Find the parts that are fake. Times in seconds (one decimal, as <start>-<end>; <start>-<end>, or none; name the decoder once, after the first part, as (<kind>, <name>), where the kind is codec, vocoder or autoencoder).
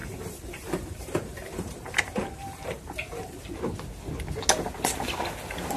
0.0-3.5 (vocoder, BigVGAN v2)